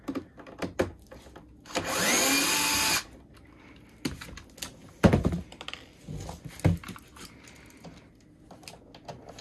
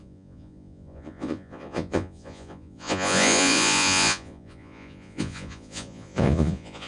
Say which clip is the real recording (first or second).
first